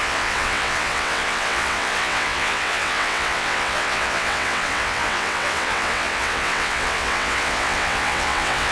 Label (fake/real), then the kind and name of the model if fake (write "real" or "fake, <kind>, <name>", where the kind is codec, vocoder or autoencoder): fake, vocoder, WaveNeXt